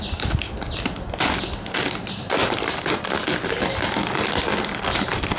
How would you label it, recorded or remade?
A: recorded